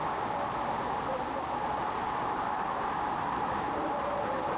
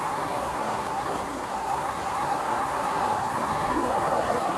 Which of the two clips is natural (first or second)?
first